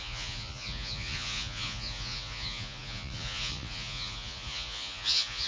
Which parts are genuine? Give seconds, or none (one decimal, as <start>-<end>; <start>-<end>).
none